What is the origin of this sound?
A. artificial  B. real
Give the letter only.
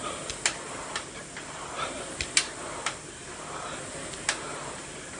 B